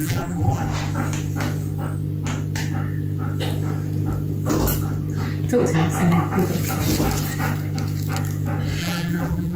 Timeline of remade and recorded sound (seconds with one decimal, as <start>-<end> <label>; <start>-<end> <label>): 0.0-0.6 remade; 0.6-8.8 recorded; 8.8-9.6 remade